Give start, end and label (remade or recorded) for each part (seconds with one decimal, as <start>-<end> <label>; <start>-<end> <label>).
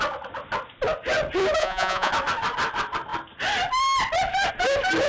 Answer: 0.0-1.6 recorded; 1.6-2.1 remade; 2.1-5.1 recorded